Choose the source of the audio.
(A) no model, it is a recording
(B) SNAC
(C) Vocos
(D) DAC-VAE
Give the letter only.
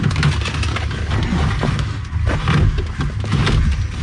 A